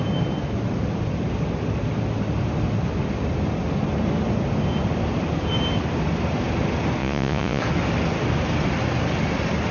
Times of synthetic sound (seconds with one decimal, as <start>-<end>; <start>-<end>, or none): 7.0-7.6